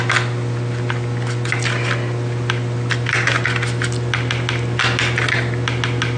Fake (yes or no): no